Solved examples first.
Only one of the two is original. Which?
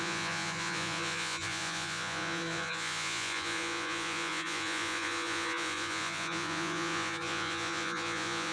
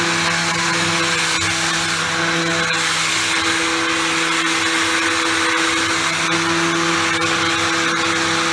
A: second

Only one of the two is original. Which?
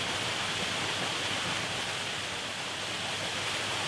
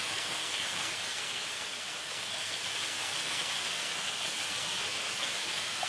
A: first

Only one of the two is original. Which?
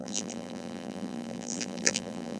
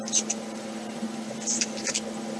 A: second